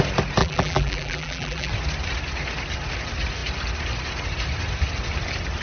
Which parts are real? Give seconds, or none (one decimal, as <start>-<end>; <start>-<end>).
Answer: 0.0-0.4; 1.7-5.6